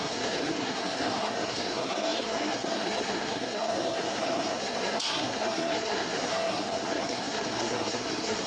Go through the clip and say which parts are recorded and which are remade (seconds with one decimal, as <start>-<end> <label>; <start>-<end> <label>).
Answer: 0.0-8.5 remade